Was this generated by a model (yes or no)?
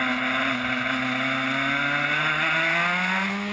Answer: no